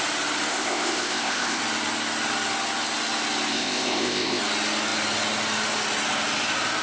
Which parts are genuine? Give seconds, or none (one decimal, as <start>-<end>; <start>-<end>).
0.0-0.5; 1.6-3.5; 4.4-6.8